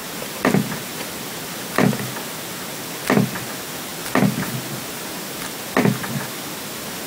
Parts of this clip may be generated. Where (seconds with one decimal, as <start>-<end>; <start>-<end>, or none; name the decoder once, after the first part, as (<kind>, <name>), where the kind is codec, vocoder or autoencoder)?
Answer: none